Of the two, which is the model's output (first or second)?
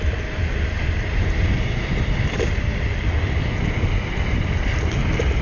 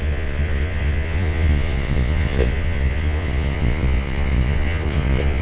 second